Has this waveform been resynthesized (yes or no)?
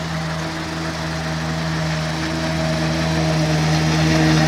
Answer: no